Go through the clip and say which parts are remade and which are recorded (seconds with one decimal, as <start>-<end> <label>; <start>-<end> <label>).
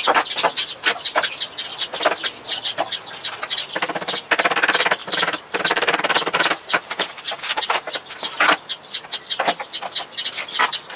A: 0.0-5.0 recorded; 5.0-9.4 remade; 9.4-11.0 recorded